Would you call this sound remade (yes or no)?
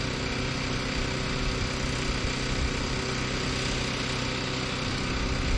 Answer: no